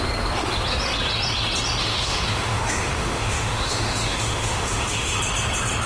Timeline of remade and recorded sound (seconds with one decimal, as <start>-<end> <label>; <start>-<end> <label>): 0.0-1.8 recorded; 1.8-5.2 remade; 5.2-5.9 recorded